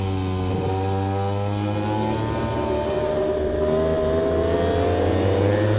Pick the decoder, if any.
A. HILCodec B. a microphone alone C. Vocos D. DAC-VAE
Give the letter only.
B